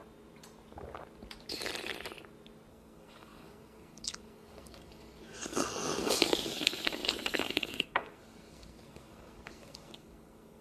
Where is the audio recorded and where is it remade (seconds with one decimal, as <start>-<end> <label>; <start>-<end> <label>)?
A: 0.0-2.7 recorded; 2.7-10.6 remade